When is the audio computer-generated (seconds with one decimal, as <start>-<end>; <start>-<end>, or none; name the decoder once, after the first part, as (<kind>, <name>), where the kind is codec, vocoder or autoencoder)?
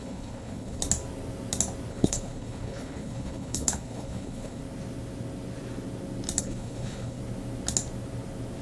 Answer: 0.0-0.8 (codec, HILCodec); 1.9-4.6; 6.4-7.2